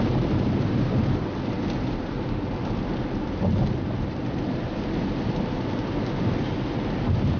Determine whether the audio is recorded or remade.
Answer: recorded